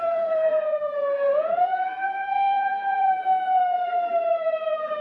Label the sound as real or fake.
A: fake